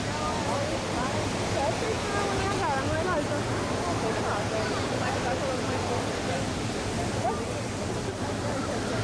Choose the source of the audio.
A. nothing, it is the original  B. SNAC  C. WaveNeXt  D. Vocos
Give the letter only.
A